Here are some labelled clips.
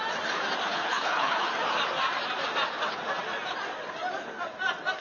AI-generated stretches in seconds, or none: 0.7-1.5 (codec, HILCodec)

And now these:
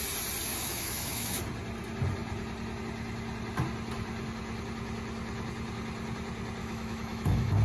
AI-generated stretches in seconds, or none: 0.5-1.4 (autoencoder, DAC-VAE); 6.6-7.6

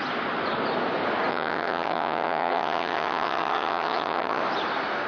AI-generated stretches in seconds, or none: 1.3-4.4 (vocoder, HiFi-GAN)

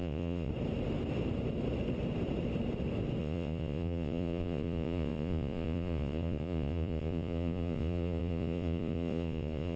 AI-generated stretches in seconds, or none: 0.0-0.5 (vocoder, Vocos); 3.2-9.8

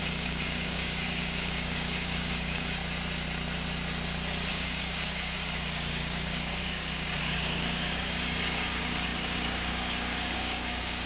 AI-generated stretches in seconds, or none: 0.0-2.8 (codec, DAC); 4.5-11.1

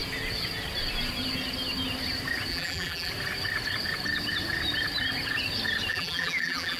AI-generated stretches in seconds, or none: 2.5-3.1 (vocoder, BigVGAN v2); 5.9-6.8

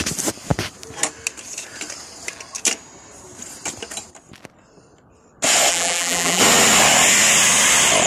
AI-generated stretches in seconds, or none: 5.7-6.4 (vocoder, BigVGAN v2)

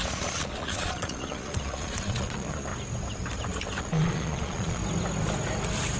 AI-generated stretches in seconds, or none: 0.0-2.7 (vocoder, Vocos); 3.8-4.8